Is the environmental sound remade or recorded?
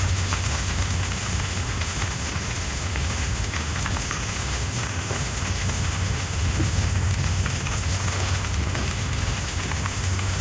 remade